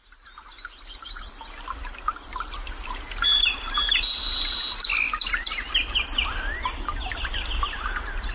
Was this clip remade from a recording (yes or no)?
no